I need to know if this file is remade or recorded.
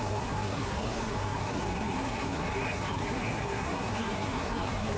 remade